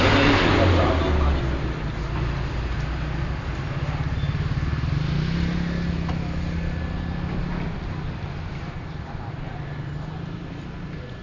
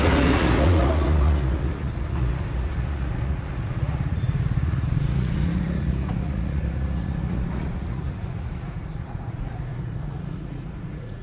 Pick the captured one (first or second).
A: first